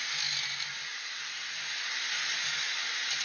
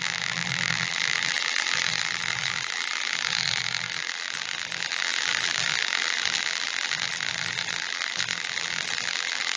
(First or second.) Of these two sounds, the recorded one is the first